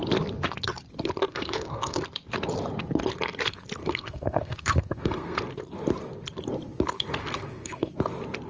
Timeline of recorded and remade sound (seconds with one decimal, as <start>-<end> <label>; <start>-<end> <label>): 0.0-1.3 recorded; 1.3-2.0 remade; 2.0-3.8 recorded; 3.8-5.4 remade; 5.4-7.2 recorded; 7.2-7.9 remade; 7.9-8.5 recorded